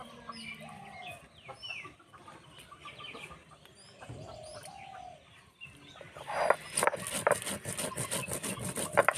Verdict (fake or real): real